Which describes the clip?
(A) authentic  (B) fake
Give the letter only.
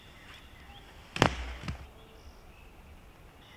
A